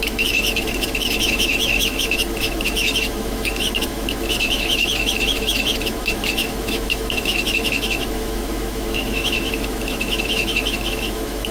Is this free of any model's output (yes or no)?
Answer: no